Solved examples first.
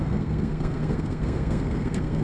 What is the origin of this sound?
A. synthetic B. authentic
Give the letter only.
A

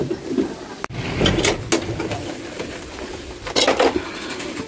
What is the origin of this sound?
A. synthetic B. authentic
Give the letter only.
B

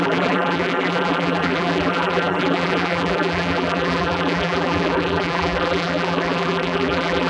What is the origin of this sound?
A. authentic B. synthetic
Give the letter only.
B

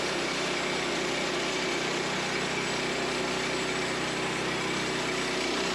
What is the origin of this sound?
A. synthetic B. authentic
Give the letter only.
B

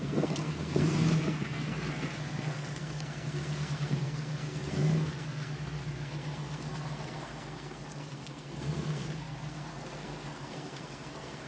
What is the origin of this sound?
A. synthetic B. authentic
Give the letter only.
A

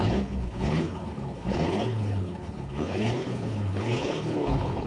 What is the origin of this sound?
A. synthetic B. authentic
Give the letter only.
A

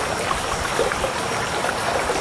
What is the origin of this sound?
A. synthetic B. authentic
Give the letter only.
B